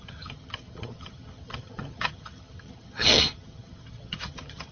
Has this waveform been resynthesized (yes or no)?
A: yes